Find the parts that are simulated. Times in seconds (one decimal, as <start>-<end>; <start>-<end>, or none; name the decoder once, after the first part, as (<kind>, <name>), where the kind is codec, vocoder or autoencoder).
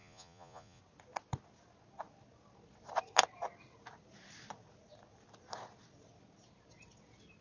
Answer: 0.0-0.8 (vocoder, Vocos)